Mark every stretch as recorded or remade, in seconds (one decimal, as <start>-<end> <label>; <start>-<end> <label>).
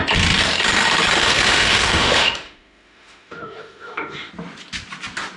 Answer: 0.0-1.2 recorded; 1.2-4.3 remade; 4.3-5.4 recorded